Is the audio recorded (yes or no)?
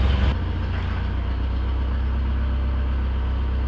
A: yes